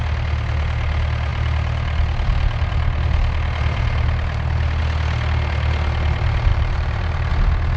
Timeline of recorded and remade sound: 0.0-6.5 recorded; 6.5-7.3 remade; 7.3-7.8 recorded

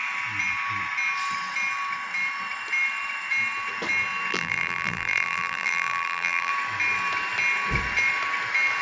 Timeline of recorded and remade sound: 0.0-4.3 recorded; 4.3-6.5 remade; 6.5-8.8 recorded

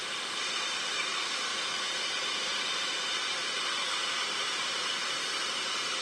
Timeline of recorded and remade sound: 0.0-1.1 remade; 1.1-1.5 recorded; 1.5-5.1 remade; 5.1-6.0 recorded

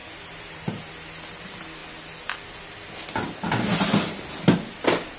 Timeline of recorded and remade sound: 0.0-0.9 remade; 0.9-5.2 recorded

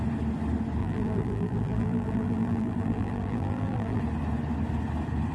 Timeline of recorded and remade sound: 0.0-0.8 recorded; 0.8-4.0 remade; 4.0-5.3 recorded

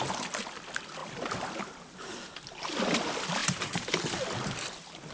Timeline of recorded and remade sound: 0.0-3.4 recorded; 3.4-3.9 remade; 3.9-5.1 recorded